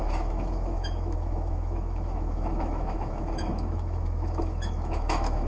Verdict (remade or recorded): remade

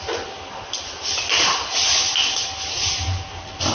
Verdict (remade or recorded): recorded